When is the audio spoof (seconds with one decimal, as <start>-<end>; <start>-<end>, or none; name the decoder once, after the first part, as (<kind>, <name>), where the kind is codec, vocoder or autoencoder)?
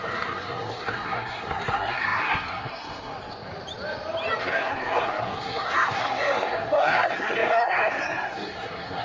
0.0-3.1 (codec, SNAC); 4.4-9.0